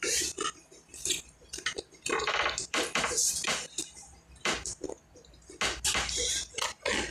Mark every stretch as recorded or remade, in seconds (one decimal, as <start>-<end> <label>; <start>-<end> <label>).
0.0-0.9 recorded; 0.9-3.0 remade; 3.0-7.1 recorded